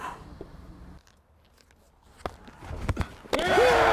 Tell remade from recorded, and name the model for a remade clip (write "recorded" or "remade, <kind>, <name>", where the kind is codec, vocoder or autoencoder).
recorded